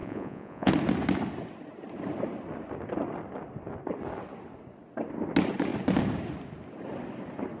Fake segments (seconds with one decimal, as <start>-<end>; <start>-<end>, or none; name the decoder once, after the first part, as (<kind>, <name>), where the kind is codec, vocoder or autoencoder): 0.0-0.7 (vocoder, Vocos)